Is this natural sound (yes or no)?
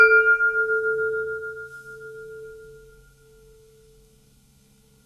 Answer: no